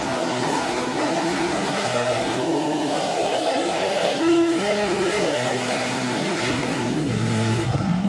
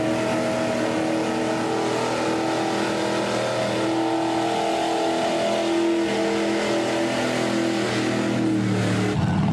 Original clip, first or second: second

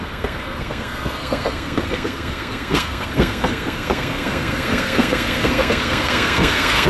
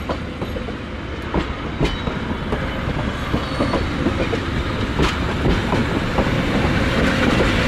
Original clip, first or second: second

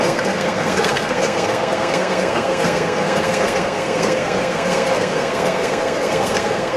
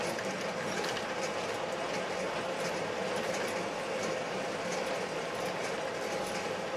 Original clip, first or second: second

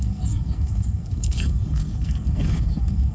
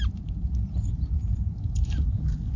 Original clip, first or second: second